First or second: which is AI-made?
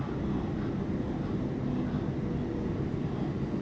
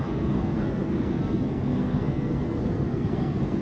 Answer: second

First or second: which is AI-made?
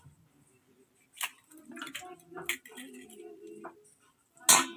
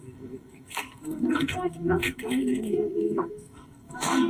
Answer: second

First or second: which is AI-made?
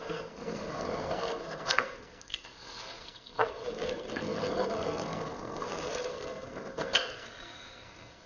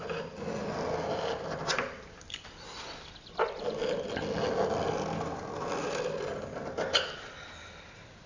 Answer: first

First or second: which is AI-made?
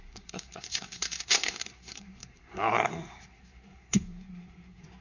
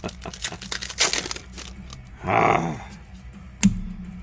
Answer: first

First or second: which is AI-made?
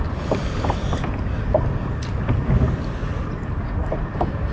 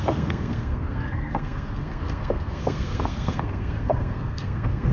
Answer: second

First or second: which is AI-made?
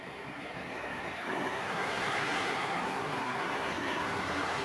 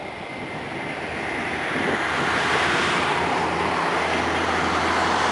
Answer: first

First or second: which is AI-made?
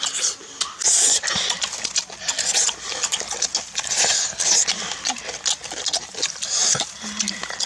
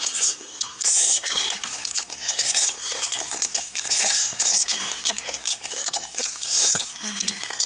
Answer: second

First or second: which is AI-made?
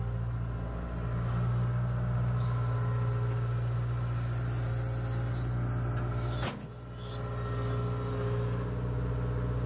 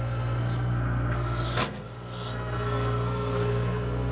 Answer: second